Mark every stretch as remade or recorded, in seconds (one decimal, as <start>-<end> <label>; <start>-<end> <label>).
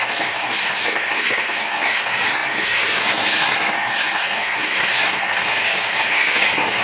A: 0.0-6.8 remade